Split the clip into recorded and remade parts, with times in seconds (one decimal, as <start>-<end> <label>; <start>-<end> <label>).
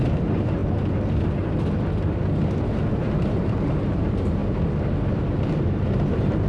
0.0-0.6 remade; 0.6-2.9 recorded; 2.9-4.4 remade; 4.4-5.1 recorded; 5.1-6.5 remade